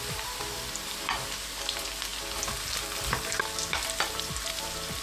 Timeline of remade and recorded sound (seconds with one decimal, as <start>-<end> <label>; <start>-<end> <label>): 0.0-2.1 remade; 2.1-4.0 recorded; 4.0-5.0 remade